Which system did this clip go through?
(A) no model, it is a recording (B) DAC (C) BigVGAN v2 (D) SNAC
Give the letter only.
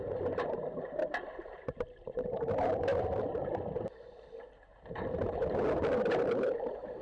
C